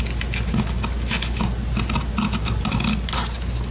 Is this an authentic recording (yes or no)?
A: yes